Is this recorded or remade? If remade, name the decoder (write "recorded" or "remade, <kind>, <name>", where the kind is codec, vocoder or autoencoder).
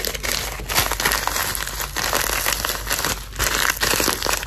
recorded